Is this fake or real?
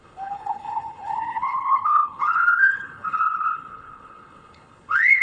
fake